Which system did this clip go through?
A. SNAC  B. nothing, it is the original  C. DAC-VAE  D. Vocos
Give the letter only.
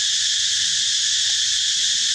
B